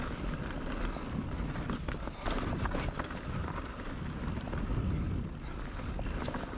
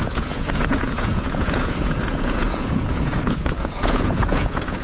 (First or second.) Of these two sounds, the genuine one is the first